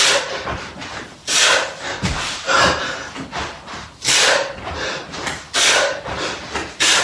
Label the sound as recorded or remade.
recorded